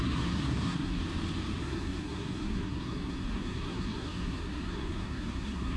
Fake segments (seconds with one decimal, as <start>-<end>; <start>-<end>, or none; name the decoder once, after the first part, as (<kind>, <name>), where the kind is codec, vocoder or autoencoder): 0.0-1.0 (codec, SNAC); 1.6-5.8